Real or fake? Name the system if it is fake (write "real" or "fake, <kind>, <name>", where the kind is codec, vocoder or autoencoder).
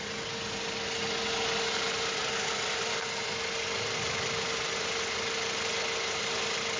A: real